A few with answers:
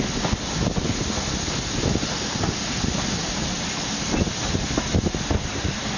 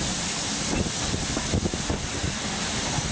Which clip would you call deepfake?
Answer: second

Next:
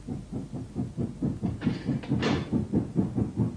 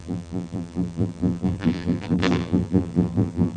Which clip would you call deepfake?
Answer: second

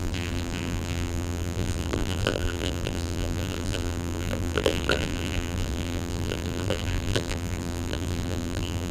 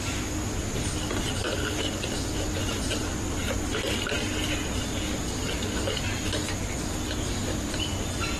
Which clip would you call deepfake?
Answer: first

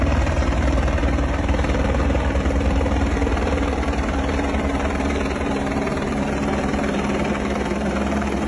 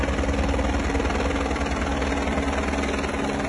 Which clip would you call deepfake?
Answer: first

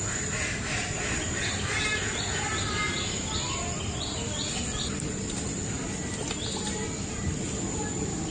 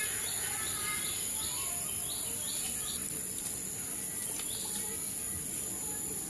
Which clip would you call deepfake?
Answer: second